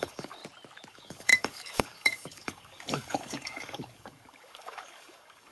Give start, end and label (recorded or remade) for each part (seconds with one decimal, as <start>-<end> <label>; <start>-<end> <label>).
0.0-0.4 remade; 0.4-0.9 recorded; 0.9-5.5 remade